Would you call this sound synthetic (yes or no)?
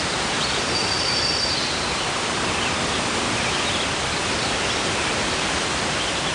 no